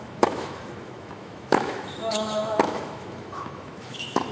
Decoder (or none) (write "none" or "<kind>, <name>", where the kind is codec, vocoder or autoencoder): autoencoder, DAC-VAE